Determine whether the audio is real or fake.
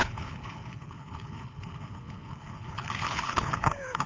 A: fake